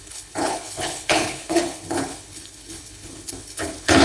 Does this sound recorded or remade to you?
remade